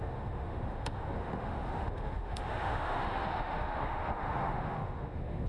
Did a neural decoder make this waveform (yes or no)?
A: yes